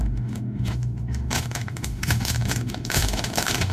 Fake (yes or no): yes